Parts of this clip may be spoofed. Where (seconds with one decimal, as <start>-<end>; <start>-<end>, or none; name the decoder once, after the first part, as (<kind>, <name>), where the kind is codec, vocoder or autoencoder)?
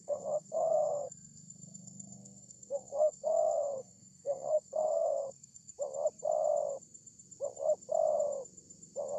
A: 0.0-5.7 (codec, SNAC)